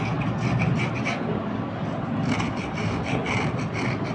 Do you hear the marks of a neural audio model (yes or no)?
no